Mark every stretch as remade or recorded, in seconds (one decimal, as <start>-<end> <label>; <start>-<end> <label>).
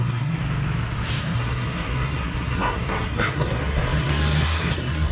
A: 0.0-0.4 remade; 0.4-1.2 recorded; 1.2-5.1 remade